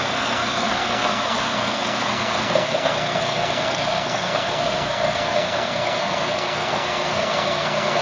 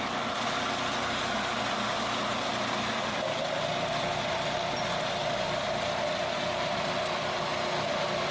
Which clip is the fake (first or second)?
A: first